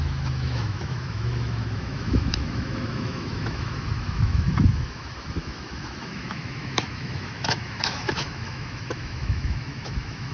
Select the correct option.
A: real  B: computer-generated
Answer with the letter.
B